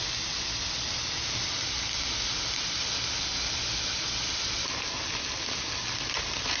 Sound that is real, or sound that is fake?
real